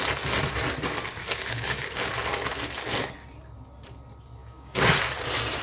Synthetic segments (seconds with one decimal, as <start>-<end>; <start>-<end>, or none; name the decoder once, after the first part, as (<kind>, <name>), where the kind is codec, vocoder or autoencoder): 1.2-2.1 (codec, DAC); 4.4-4.9